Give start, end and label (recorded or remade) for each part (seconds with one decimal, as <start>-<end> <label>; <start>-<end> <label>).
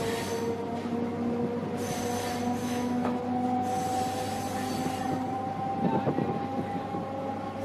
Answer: 0.0-2.6 recorded; 2.6-3.2 remade; 3.2-7.6 recorded